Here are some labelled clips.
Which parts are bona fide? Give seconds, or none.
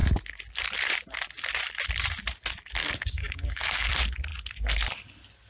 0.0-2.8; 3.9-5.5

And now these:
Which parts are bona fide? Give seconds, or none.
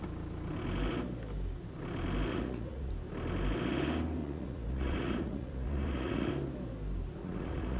0.0-2.3; 2.9-4.2; 6.3-7.2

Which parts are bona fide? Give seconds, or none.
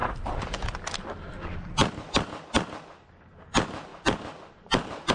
0.0-3.1; 3.9-4.5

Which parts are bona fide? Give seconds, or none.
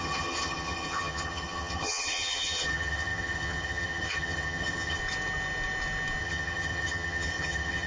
5.0-6.2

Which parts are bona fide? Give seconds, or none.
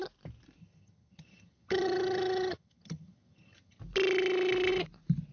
0.0-0.6; 3.8-5.3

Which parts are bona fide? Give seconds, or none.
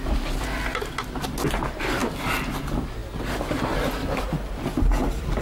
0.0-5.4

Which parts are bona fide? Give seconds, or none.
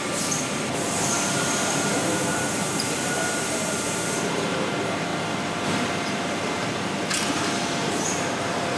none